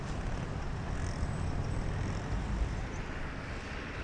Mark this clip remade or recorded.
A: remade